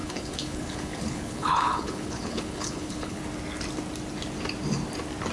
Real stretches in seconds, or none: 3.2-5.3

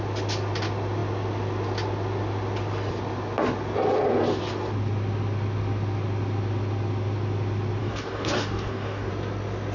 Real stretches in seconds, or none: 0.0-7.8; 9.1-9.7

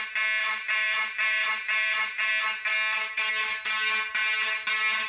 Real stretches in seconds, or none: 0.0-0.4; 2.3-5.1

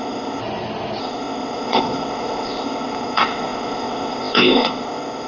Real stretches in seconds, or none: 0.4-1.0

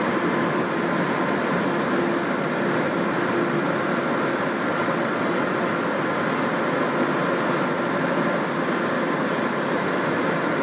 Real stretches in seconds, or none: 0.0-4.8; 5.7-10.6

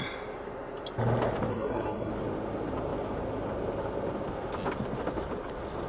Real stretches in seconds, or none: 0.0-1.5; 2.1-5.9

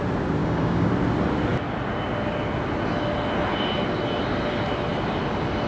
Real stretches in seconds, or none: 0.0-0.4; 0.9-5.7

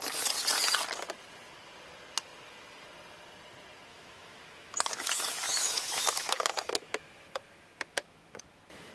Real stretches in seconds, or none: 0.0-3.9